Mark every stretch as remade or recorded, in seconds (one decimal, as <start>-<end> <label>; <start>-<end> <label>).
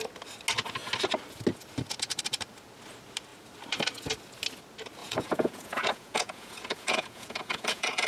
0.0-5.0 recorded; 5.0-8.1 remade